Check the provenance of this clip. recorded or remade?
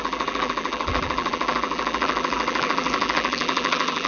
remade